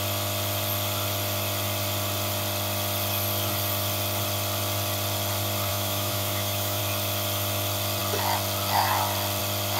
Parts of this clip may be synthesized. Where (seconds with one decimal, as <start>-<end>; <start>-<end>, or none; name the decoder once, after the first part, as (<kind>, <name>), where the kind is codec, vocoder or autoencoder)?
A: 5.7-6.8 (autoencoder, DAC-VAE)